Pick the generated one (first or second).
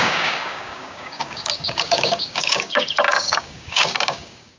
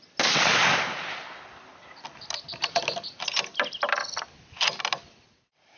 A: first